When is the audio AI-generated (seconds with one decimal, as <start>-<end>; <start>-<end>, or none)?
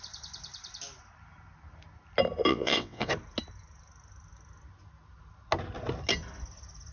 2.5-3.1